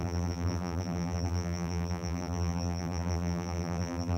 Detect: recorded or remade remade